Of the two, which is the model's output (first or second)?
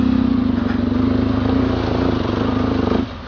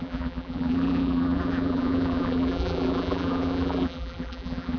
second